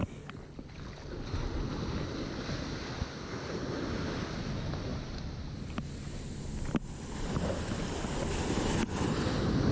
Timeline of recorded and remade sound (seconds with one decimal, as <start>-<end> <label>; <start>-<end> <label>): 0.0-4.9 recorded; 4.9-5.5 remade; 5.5-9.7 recorded